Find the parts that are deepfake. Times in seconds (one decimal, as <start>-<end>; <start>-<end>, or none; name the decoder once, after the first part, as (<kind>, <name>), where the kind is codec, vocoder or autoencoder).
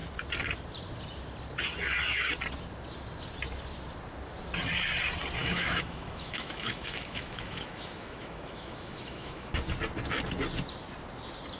5.4-9.5 (autoencoder, DAC-VAE)